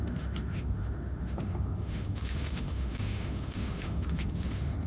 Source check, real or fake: fake